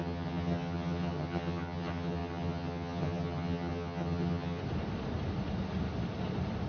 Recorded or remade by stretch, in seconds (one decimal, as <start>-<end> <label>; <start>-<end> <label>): 0.0-4.6 remade; 4.6-6.7 recorded